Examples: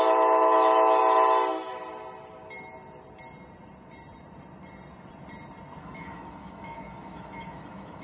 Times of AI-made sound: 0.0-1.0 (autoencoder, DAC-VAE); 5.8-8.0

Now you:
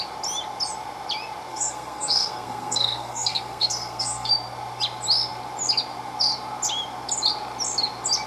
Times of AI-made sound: 1.5-4.3 (codec, SNAC)

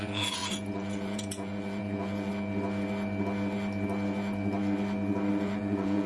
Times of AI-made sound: 0.0-2.3 (vocoder, Vocos); 5.3-6.1

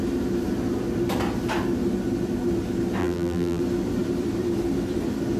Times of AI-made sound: 3.0-3.6 (vocoder, BigVGAN v2)

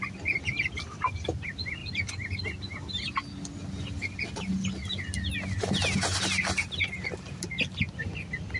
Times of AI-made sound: none

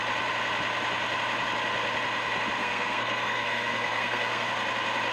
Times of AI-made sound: 2.6-4.5 (codec, SNAC)